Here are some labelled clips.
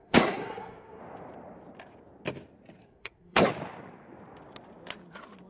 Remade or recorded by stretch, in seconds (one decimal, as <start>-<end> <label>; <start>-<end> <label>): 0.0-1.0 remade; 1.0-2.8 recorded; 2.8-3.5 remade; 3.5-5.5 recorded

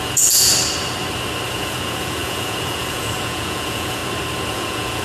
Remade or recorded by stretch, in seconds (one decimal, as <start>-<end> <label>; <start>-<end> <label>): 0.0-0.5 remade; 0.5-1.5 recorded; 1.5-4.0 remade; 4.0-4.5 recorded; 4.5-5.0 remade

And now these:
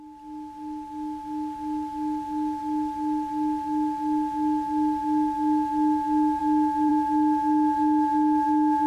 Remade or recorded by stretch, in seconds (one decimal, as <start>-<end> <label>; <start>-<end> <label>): 0.0-8.9 recorded